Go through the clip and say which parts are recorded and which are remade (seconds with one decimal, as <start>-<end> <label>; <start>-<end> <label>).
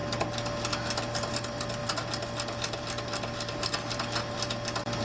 0.0-5.0 recorded